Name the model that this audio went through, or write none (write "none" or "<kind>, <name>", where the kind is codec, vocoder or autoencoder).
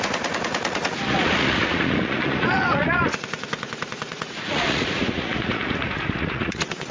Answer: vocoder, Vocos